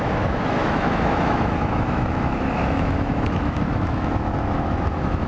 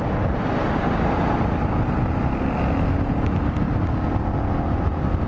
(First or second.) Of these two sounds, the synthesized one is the first